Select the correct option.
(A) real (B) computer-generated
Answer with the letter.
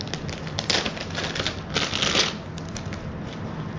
A